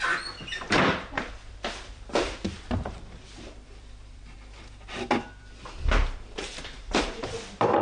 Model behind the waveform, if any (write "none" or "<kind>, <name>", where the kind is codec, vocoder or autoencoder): vocoder, BigVGAN v2